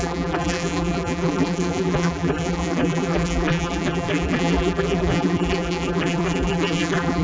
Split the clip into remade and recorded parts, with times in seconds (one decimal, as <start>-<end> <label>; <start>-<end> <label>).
0.0-7.2 remade